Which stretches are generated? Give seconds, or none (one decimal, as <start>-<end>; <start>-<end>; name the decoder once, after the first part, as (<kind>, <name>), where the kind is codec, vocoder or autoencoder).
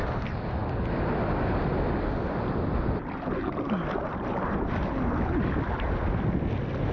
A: none